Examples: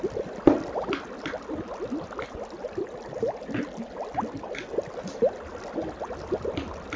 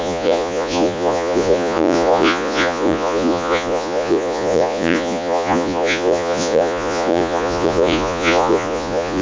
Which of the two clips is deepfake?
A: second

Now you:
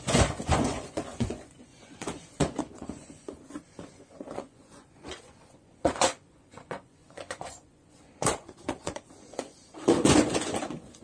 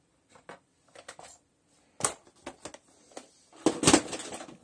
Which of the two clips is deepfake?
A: first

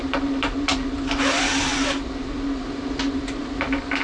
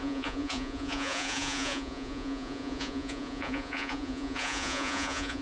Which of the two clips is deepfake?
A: second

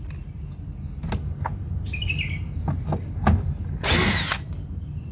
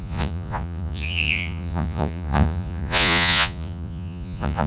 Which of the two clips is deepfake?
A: second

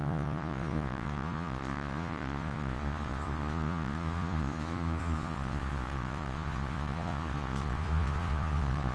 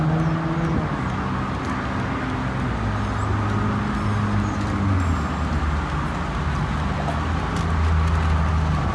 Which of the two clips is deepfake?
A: first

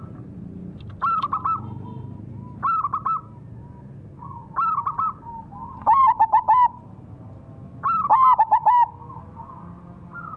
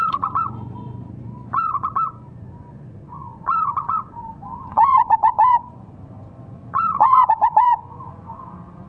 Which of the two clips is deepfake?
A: second